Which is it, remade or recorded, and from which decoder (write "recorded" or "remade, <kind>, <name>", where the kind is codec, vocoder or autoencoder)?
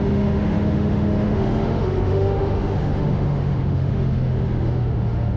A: remade, autoencoder, DAC-VAE